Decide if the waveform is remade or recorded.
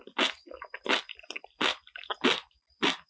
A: recorded